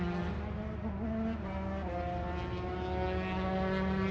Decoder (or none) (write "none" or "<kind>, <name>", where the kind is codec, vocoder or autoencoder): none